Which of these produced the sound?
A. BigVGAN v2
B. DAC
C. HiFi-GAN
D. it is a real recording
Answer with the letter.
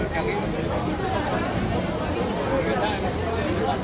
D